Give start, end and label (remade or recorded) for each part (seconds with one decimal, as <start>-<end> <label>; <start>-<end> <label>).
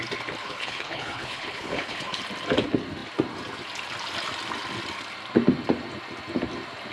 0.0-0.4 recorded; 0.4-2.2 remade; 2.2-6.9 recorded